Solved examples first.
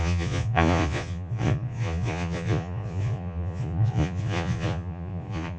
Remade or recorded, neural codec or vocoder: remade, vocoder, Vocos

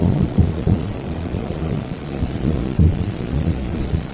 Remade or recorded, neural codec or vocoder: remade, vocoder, Vocos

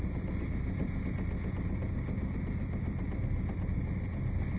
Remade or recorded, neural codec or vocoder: recorded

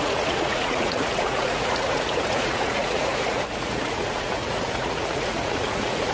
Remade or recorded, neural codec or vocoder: remade, vocoder, Vocos